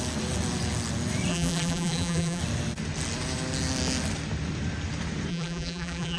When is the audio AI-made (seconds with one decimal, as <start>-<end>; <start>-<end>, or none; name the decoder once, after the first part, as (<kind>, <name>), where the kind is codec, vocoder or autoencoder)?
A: 1.3-2.4 (vocoder, BigVGAN v2); 5.3-6.2